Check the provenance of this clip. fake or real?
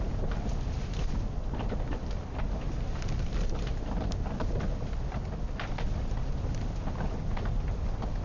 real